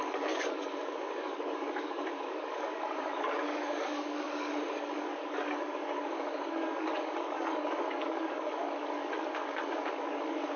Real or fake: fake